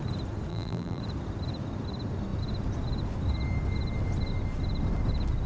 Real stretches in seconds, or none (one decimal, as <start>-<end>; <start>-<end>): 0.0-0.5; 1.0-5.5